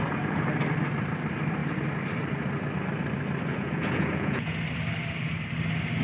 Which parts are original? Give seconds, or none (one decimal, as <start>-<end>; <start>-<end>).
0.0-3.5; 4.6-6.0